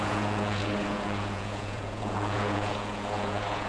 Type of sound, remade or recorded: remade